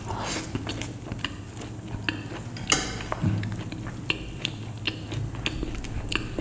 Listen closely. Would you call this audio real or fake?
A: real